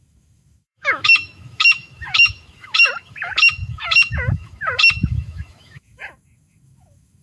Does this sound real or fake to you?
fake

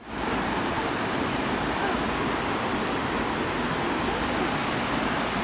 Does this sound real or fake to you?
real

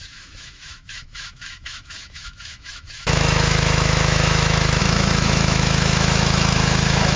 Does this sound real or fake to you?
fake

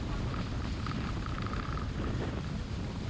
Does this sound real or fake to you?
real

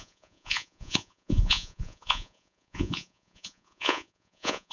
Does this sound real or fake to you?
fake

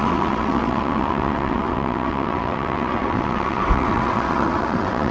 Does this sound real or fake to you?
fake